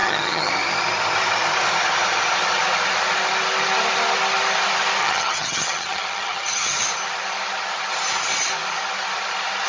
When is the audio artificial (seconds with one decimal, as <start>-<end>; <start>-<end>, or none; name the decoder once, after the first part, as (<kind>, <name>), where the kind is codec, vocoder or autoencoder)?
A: 0.0-0.5 (vocoder, HiFi-GAN); 5.0-6.8